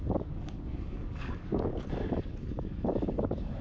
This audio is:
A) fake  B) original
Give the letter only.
A